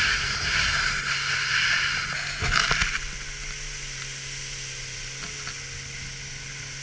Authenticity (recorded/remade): recorded